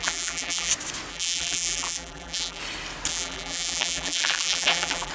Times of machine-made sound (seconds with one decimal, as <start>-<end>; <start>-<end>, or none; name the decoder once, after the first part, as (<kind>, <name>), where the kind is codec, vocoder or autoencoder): 0.0-0.7 (vocoder, BigVGAN v2); 1.1-2.6; 3.1-5.1

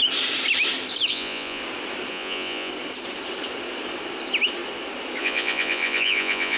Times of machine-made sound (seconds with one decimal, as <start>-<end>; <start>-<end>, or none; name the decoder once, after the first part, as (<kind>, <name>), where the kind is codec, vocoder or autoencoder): 1.1-1.6 (vocoder, Vocos); 2.1-2.7; 5.2-6.6

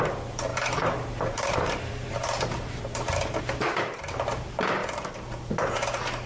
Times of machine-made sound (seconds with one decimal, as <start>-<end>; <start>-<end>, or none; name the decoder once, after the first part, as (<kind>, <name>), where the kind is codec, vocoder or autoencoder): 0.5-3.4 (vocoder, BigVGAN v2)

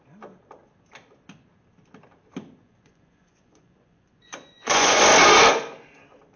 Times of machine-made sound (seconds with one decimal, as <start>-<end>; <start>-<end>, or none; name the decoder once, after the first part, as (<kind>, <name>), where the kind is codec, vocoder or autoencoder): 2.6-5.0 (vocoder, Vocos)

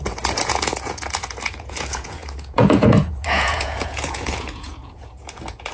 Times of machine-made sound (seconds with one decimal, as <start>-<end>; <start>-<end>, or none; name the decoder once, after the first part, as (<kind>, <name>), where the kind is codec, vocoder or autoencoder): 0.0-5.7 (vocoder, Vocos)

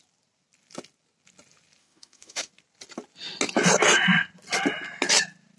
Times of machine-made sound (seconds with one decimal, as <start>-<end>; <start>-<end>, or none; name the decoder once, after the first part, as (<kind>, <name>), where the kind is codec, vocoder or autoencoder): 1.8-2.5 (autoencoder, DAC-VAE)

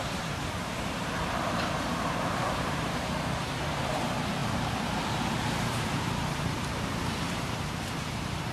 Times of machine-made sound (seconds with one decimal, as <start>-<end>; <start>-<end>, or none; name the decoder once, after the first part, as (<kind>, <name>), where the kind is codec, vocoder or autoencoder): 0.0-4.4 (vocoder, BigVGAN v2); 5.0-8.5